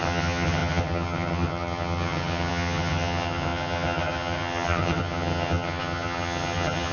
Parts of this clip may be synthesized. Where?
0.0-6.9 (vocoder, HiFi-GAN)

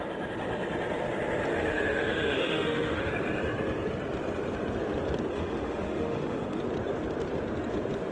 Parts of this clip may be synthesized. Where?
1.5-3.1 (autoencoder, DAC-VAE); 5.3-6.6

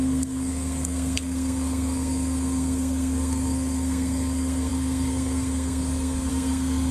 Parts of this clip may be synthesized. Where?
0.0-6.9 (codec, SNAC)

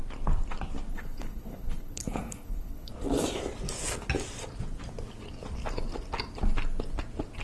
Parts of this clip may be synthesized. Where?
0.9-2.9 (codec, HILCodec)

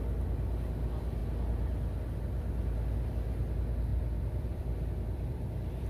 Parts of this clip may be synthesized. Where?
3.9-5.9 (vocoder, BigVGAN v2)

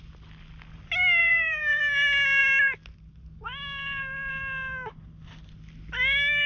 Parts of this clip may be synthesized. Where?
1.2-1.8 (vocoder, BigVGAN v2)

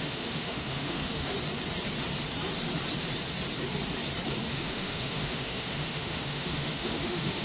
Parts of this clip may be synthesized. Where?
0.0-1.3 (autoencoder, DAC-VAE); 4.4-7.4